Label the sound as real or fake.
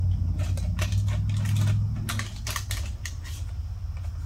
real